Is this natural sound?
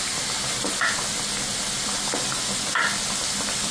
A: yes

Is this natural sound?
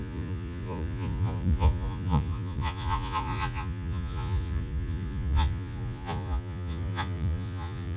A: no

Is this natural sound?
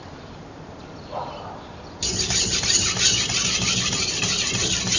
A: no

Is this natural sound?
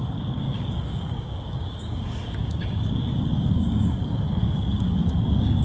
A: no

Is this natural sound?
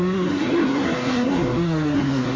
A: no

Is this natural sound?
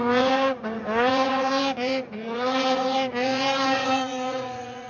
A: no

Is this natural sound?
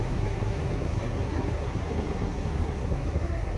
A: no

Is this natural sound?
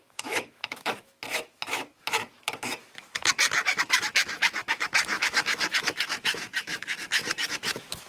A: no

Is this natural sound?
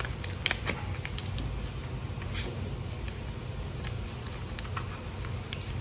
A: yes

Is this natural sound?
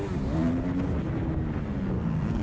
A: yes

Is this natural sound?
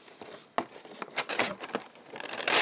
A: yes